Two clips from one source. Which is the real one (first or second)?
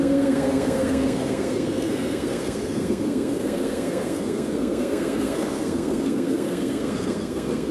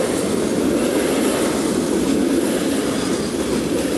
second